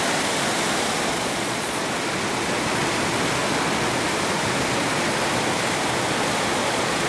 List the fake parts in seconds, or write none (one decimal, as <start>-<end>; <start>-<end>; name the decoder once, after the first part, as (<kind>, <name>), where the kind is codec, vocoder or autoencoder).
1.1-1.8 (vocoder, Vocos); 6.6-7.1